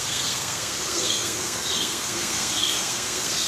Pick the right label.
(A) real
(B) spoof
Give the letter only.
B